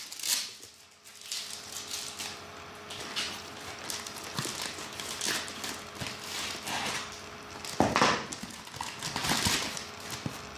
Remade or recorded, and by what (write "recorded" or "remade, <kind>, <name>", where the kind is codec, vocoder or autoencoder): recorded